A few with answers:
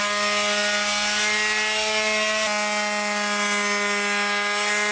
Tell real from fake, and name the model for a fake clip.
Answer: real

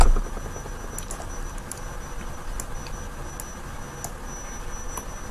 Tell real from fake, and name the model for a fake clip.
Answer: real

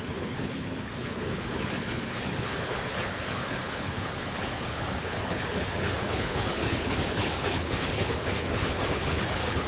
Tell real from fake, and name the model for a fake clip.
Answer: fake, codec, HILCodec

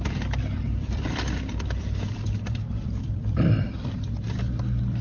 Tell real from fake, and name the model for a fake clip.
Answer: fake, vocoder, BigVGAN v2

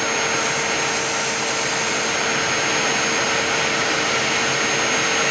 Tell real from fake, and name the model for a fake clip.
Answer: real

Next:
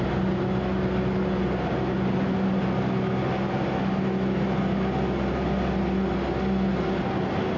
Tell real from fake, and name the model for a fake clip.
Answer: real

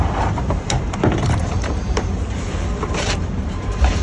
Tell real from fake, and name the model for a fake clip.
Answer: fake, vocoder, BigVGAN v2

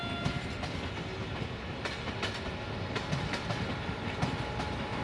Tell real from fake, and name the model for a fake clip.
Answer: real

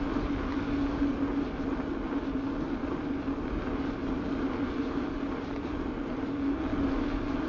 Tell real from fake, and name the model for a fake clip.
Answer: real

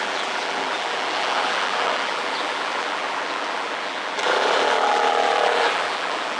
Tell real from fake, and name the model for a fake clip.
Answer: fake, vocoder, BigVGAN v2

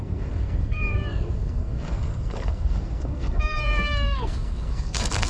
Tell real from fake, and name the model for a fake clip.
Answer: fake, codec, SNAC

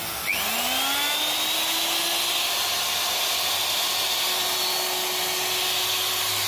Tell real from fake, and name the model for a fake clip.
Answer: real